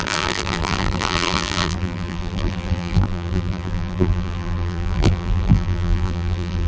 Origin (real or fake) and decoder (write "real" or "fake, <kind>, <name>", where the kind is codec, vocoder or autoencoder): fake, vocoder, BigVGAN v2